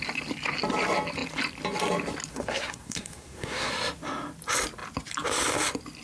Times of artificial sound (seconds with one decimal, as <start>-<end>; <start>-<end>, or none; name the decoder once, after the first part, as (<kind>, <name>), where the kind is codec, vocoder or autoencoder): 2.3-3.7 (codec, SNAC)

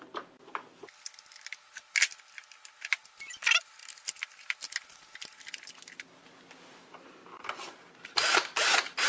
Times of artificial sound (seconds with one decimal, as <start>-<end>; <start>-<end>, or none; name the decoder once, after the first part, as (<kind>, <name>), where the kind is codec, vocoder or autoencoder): none

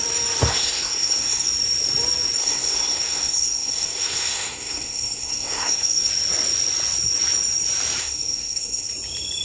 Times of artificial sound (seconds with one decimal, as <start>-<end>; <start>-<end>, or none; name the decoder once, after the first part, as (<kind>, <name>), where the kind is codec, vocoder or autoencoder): 0.5-1.5 (codec, SNAC); 2.4-6.1; 8.0-8.9